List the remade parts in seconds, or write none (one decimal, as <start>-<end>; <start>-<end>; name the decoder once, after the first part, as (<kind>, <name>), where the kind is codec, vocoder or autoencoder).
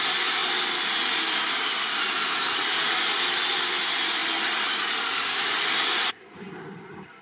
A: 0.0-0.4 (vocoder, BigVGAN v2); 1.3-7.2